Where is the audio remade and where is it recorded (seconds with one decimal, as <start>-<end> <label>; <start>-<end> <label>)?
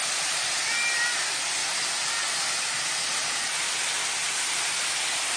0.0-5.4 recorded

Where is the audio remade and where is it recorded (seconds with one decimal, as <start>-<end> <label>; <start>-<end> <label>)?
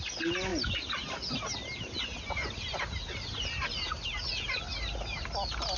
0.0-5.8 recorded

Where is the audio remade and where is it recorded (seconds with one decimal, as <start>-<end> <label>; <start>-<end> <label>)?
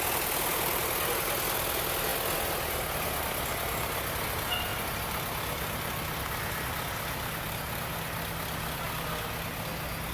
0.0-10.1 recorded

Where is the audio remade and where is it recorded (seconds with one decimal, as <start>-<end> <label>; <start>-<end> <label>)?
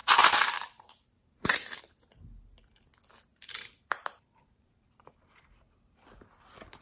0.0-1.8 remade; 1.8-3.3 recorded; 3.3-5.4 remade; 5.4-6.8 recorded